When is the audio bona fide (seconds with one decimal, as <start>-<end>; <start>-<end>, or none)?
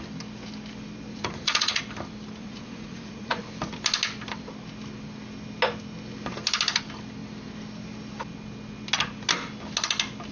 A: 0.0-1.1; 1.8-2.4; 3.4-10.3